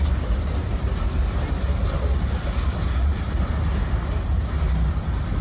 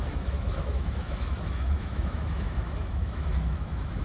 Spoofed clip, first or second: second